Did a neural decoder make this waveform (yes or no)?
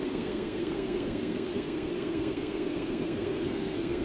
yes